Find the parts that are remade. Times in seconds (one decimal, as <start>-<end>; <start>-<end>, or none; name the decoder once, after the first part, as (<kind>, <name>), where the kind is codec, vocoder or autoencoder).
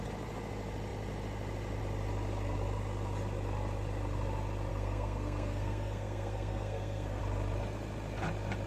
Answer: 4.7-7.2 (codec, SNAC)